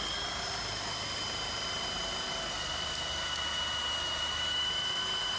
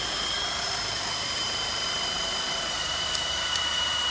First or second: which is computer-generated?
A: second